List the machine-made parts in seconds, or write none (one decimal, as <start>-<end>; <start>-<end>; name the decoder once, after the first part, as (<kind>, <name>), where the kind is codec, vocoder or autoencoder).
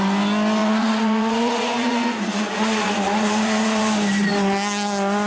0.6-3.8 (vocoder, Vocos)